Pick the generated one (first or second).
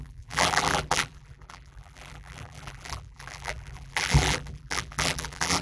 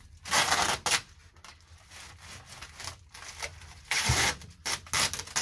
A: first